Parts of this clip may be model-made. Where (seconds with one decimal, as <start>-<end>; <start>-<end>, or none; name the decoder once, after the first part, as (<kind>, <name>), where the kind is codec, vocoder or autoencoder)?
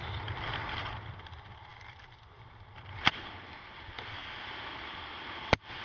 none